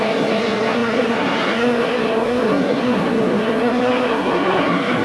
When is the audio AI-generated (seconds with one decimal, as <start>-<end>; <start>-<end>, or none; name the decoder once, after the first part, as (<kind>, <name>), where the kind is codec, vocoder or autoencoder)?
0.0-5.0 (codec, SNAC)